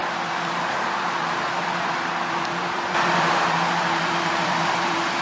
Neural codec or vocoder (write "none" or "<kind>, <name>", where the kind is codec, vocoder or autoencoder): vocoder, BigVGAN v2